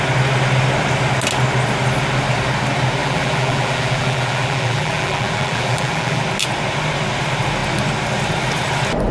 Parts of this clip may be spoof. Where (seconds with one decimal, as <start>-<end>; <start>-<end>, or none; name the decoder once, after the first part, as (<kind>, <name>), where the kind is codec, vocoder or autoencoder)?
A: 3.0-6.2 (vocoder, BigVGAN v2)